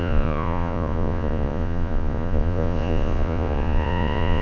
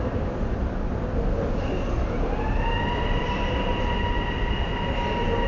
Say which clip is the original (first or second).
second